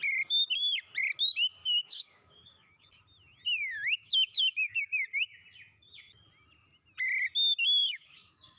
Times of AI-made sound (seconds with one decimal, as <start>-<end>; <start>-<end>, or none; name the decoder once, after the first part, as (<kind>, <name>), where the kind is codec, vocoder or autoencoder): 1.6-2.9 (codec, DAC); 4.0-4.8; 7.8-8.6